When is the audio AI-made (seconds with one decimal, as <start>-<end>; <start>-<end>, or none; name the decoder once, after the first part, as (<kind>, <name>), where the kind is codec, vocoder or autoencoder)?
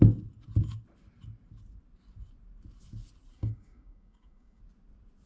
3.3-4.6 (codec, DAC)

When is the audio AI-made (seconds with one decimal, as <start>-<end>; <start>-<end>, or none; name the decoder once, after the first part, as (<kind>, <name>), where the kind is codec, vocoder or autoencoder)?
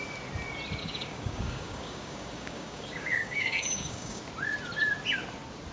0.8-4.2 (codec, DAC)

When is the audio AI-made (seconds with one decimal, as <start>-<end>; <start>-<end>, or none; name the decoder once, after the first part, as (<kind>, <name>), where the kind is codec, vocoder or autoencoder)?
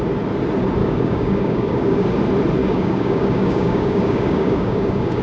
0.8-2.1 (codec, DAC); 2.6-5.2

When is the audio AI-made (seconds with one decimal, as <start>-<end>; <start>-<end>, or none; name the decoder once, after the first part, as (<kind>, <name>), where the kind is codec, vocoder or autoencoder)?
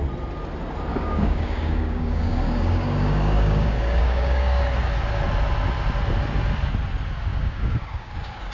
0.9-4.6 (codec, DAC); 7.3-8.5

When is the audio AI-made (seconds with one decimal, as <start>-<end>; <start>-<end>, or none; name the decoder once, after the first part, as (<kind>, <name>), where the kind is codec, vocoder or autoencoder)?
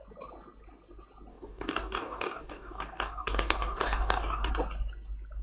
1.3-4.5 (codec, DAC)